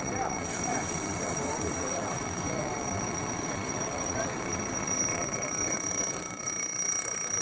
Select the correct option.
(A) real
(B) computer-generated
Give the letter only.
B